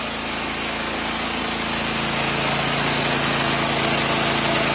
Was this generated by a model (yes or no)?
no